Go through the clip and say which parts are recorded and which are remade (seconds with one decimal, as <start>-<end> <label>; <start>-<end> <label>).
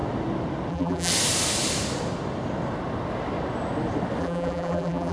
0.0-0.7 recorded; 0.7-1.1 remade; 1.1-4.2 recorded; 4.2-5.1 remade